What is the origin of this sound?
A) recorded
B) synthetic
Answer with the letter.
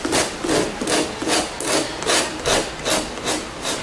A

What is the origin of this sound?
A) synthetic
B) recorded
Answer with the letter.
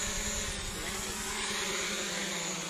B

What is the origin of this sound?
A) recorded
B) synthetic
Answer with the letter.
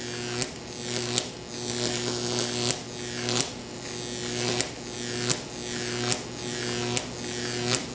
A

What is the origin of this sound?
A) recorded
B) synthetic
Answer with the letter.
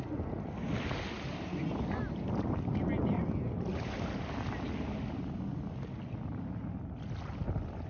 A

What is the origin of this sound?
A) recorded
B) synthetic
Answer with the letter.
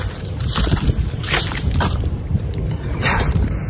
B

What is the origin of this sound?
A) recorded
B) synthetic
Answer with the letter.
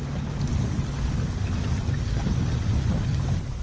A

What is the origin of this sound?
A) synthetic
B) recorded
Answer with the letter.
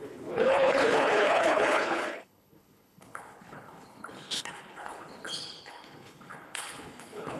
A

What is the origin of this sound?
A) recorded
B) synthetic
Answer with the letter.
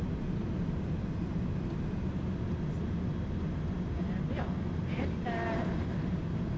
A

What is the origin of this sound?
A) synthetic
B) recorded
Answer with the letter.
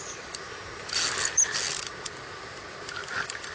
B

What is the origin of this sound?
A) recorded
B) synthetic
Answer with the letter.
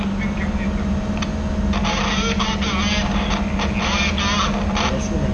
A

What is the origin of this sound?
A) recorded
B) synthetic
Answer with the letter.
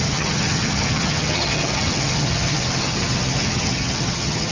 B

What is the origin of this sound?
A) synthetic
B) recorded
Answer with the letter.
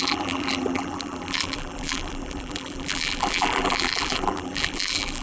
A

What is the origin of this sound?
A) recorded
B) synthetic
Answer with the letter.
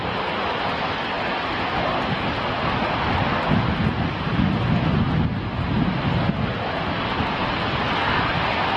A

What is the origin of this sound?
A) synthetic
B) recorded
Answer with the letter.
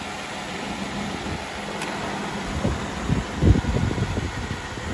B